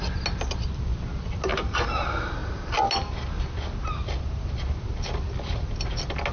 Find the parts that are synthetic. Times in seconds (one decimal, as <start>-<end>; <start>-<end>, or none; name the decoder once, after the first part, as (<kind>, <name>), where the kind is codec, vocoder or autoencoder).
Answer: none